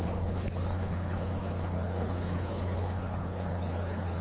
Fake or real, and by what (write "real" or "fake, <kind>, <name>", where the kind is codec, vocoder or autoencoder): fake, codec, HILCodec